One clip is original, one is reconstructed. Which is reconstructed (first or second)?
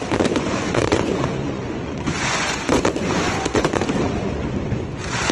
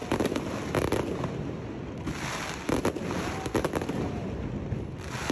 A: first